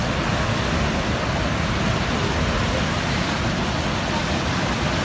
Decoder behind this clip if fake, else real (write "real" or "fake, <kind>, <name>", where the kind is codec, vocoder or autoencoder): real